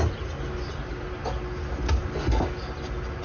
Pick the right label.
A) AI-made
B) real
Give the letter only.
B